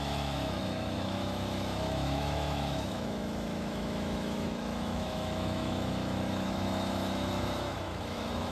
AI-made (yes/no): yes